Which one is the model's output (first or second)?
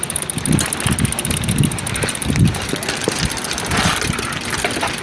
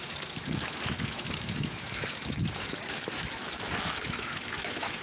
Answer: second